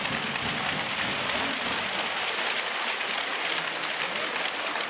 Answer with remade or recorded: recorded